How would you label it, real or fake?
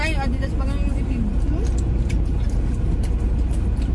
real